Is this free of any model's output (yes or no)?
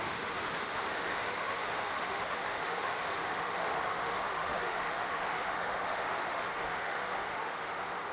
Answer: no